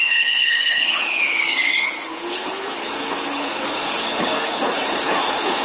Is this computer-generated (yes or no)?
yes